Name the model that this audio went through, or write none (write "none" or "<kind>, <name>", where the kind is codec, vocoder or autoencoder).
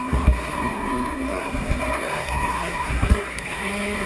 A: codec, SNAC